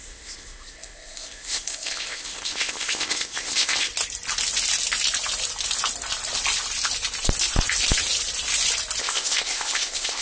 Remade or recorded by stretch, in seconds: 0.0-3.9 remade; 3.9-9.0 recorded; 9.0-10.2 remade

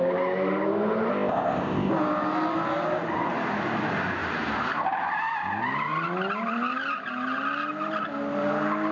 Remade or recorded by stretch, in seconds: 0.0-1.1 recorded; 1.1-1.9 remade; 1.9-8.9 recorded

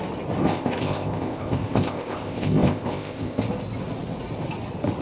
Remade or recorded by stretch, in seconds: 0.0-0.4 recorded; 0.4-3.4 remade; 3.4-5.0 recorded

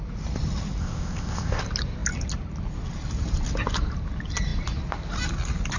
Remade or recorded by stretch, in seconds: 0.0-0.8 recorded; 0.8-1.6 remade; 1.6-5.8 recorded

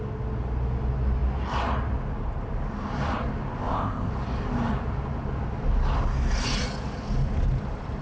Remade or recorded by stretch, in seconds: 0.0-3.6 recorded; 3.6-4.1 remade; 4.1-8.0 recorded

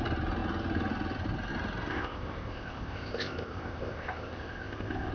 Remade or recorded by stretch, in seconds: 0.0-1.9 recorded; 1.9-5.1 remade